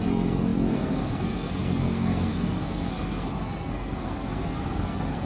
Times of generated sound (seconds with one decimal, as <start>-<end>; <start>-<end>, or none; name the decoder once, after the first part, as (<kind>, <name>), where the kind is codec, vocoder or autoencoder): 0.0-5.3 (codec, SNAC)